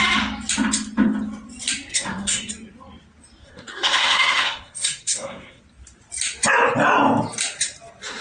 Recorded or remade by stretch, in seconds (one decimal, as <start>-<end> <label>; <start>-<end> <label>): 0.0-1.9 recorded; 1.9-2.5 remade; 2.5-3.4 recorded; 3.4-5.6 remade; 5.6-8.2 recorded

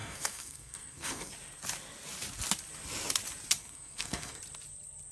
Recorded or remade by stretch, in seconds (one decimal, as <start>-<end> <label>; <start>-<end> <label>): 0.0-1.3 remade; 1.3-3.6 recorded; 3.6-4.4 remade; 4.4-5.1 recorded